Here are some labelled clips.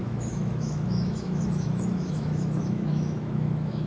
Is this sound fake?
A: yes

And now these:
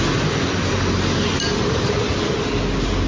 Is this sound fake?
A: no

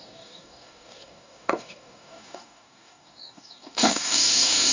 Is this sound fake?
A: yes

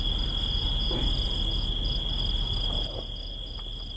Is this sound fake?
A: no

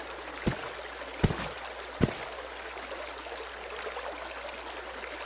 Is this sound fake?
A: no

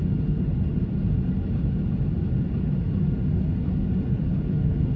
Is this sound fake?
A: no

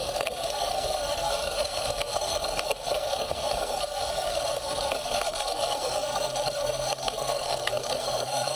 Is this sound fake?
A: yes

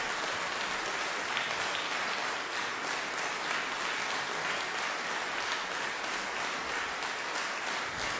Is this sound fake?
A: no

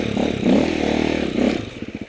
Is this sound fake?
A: no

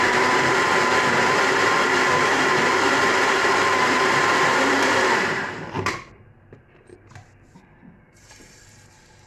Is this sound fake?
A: yes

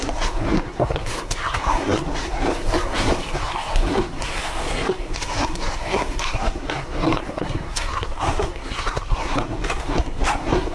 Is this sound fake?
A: yes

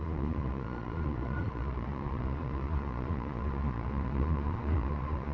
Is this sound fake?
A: yes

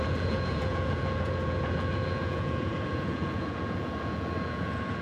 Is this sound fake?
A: yes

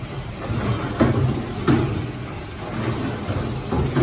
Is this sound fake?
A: no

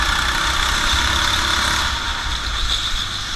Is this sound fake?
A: no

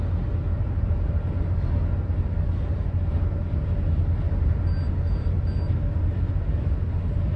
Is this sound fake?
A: no